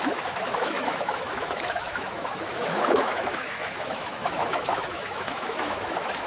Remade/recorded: remade